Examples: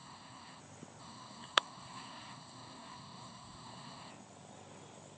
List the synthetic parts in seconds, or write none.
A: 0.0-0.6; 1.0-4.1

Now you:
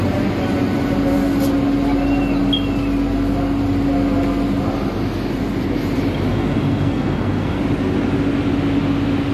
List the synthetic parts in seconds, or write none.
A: 6.3-7.6